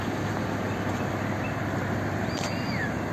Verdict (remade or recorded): recorded